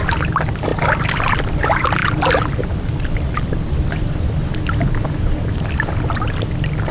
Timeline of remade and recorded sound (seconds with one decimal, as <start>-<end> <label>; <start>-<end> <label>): 0.0-6.9 recorded